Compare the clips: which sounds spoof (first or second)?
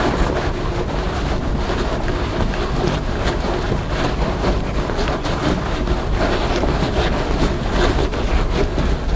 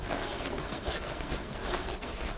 second